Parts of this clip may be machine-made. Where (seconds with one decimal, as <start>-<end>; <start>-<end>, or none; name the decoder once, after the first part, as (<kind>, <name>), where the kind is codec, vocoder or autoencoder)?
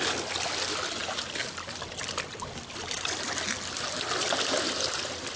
none